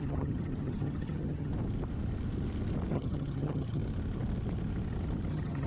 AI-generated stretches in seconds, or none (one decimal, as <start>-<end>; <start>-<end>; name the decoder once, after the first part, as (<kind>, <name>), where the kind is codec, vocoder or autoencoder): 0.0-1.5 (vocoder, HiFi-GAN); 2.9-3.8; 5.3-5.7